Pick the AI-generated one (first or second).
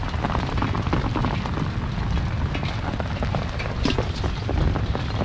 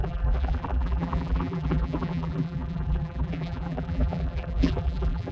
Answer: second